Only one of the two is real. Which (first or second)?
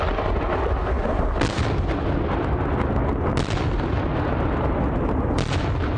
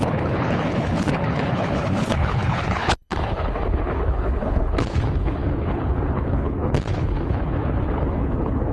first